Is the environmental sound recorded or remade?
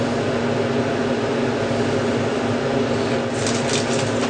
recorded